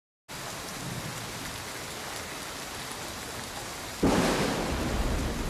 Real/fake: real